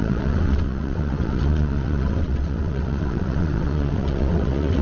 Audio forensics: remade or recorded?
remade